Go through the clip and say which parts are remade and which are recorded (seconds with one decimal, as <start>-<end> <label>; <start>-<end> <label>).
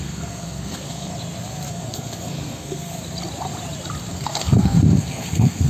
0.0-1.1 remade; 1.1-1.7 recorded; 1.7-2.9 remade; 2.9-4.1 recorded; 4.1-5.7 remade